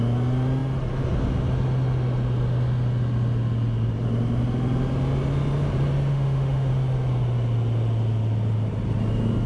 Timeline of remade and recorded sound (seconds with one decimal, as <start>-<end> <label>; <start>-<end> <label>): 0.0-6.1 recorded; 6.1-6.7 remade; 6.7-9.5 recorded